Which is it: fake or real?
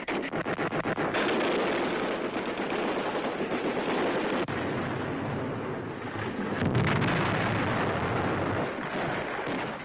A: real